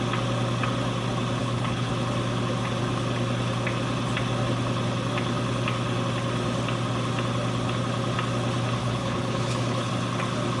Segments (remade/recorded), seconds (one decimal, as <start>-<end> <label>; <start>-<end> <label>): 0.0-1.4 recorded; 1.4-1.9 remade; 1.9-8.8 recorded; 8.8-9.9 remade; 9.9-10.6 recorded

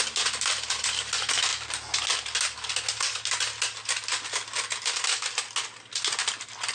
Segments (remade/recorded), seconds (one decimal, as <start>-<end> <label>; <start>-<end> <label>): 0.0-6.7 recorded

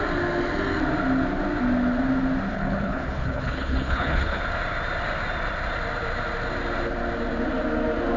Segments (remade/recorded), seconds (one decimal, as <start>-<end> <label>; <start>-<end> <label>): 0.0-2.5 recorded; 2.5-4.4 remade; 4.4-8.2 recorded

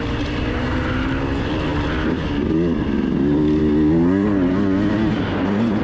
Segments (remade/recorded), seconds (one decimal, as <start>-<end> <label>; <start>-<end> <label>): 0.0-5.8 recorded

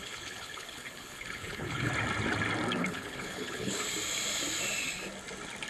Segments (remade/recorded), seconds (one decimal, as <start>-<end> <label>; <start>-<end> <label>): 0.0-1.9 remade; 1.9-2.8 recorded; 2.8-3.8 remade; 3.8-5.7 recorded